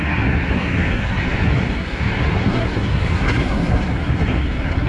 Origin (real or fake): fake